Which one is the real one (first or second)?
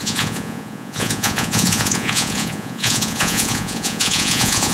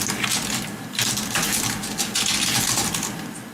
second